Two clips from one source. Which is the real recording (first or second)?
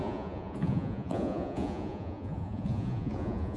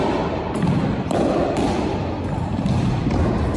second